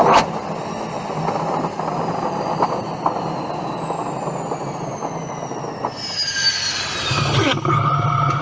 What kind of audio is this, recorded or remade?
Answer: recorded